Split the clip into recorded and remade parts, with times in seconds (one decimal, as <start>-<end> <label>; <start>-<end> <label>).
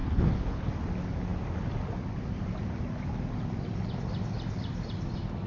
0.0-0.7 remade; 0.7-5.5 recorded